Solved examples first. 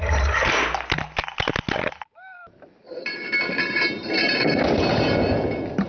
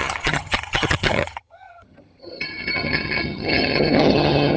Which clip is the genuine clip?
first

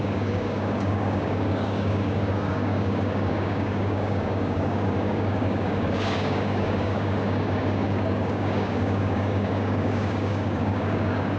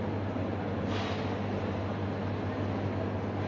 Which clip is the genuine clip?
second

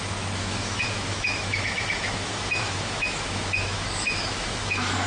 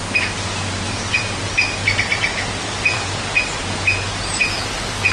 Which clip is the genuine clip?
second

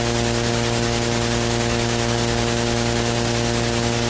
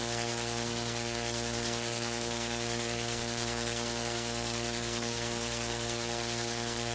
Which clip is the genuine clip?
first